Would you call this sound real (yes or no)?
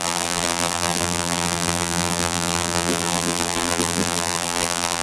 no